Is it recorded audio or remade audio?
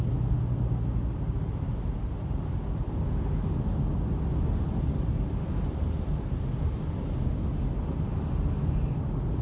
recorded